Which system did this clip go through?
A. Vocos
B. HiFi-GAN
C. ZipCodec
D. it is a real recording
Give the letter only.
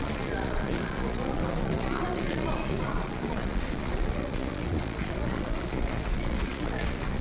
A